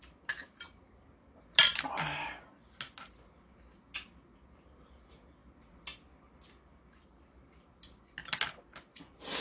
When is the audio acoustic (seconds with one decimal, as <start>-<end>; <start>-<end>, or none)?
0.0-9.4